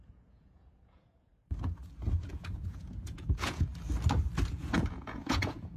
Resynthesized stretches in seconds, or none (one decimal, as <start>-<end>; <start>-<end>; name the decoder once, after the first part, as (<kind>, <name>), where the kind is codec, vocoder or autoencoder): 0.0-1.3 (vocoder, Vocos); 2.3-3.7; 4.5-5.8